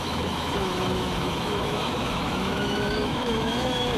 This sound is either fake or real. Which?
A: fake